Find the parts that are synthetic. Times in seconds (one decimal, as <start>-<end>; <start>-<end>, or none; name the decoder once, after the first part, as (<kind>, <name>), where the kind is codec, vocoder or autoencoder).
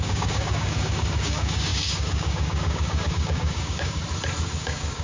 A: 0.0-4.0 (codec, DAC); 4.6-5.0